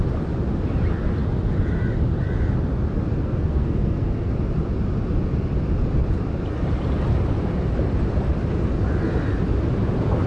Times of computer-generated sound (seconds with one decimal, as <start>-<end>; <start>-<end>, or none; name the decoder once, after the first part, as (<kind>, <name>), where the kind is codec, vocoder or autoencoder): 3.2-4.3 (codec, SNAC)